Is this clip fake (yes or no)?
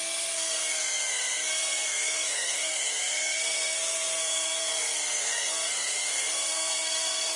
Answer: yes